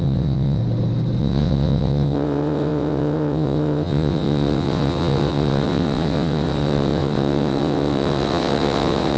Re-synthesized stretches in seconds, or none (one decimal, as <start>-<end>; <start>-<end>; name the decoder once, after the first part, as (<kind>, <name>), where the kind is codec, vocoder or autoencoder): 0.0-0.6 (vocoder, WaveNeXt); 1.2-9.2